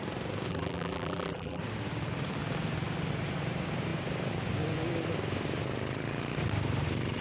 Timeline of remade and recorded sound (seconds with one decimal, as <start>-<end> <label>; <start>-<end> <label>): 0.0-0.5 recorded; 0.5-1.6 remade; 1.6-7.2 recorded